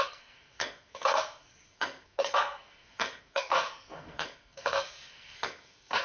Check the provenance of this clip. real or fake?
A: fake